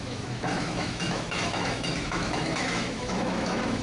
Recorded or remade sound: remade